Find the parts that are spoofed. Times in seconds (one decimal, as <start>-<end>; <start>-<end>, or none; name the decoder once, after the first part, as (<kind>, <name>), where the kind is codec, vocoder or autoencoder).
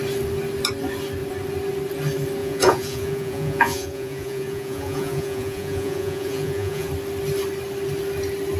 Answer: 2.4-6.9 (vocoder, Vocos)